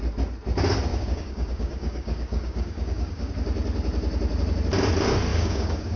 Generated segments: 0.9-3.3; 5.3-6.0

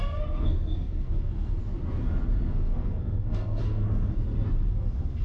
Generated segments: 0.0-1.6; 2.5-4.2; 4.7-5.2

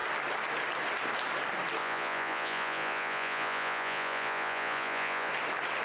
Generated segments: 1.8-5.3

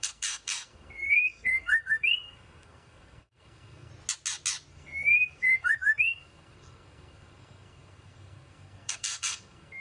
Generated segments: 0.0-3.9; 4.7-9.8

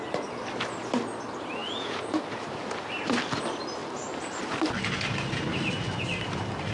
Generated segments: 1.6-2.2

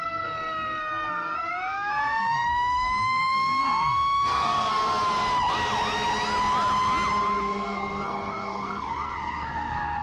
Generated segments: 0.0-4.8; 7.4-10.0

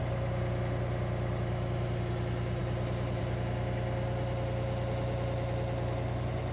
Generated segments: none

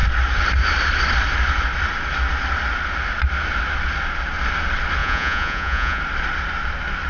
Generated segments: 5.0-6.0